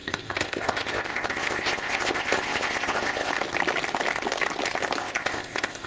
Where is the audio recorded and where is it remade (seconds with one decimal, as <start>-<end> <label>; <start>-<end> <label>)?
0.0-3.3 remade; 3.3-5.0 recorded; 5.0-5.9 remade